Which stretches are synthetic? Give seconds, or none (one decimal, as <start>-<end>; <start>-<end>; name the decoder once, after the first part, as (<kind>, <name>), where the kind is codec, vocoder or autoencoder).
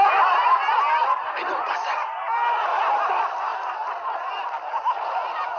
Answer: none